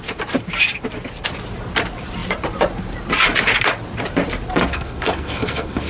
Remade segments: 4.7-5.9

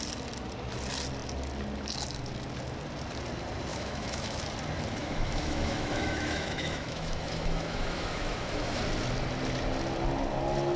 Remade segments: 3.7-4.4; 5.0-8.8

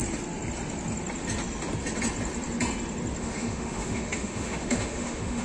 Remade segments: 3.2-5.4

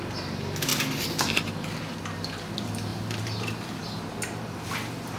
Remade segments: 0.7-1.7; 2.9-4.0

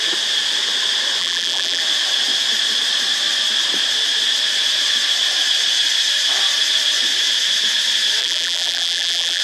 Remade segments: 1.2-1.8; 8.2-9.4

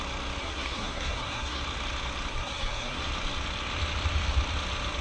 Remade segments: 0.4-1.6; 2.3-3.0

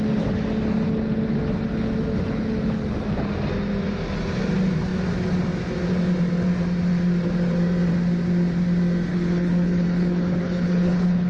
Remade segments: 9.1-11.3